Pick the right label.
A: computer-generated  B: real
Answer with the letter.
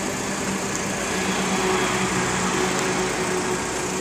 B